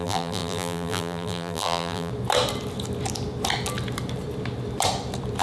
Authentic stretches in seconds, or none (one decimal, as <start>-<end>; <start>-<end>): 2.1-5.4